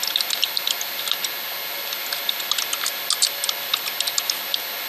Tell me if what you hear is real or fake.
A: real